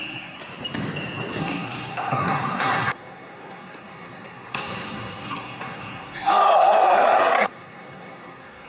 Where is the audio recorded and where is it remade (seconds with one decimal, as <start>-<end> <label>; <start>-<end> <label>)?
0.0-0.4 remade; 0.4-1.4 recorded; 1.4-8.7 remade